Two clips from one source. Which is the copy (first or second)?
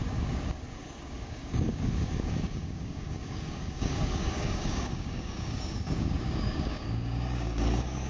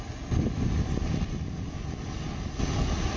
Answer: first